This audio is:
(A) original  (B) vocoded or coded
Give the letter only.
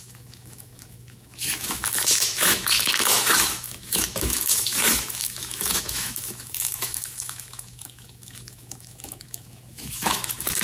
B